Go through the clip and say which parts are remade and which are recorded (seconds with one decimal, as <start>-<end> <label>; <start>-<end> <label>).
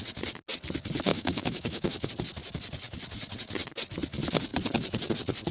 0.0-1.1 recorded; 1.1-2.1 remade; 2.1-5.5 recorded